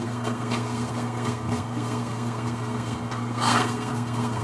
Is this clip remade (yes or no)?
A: yes